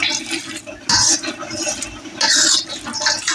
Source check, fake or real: real